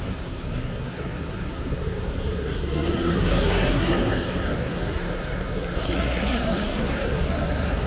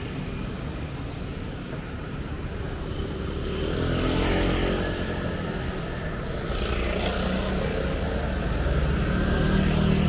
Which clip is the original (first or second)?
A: second